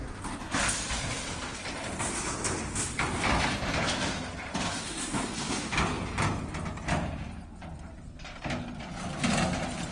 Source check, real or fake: real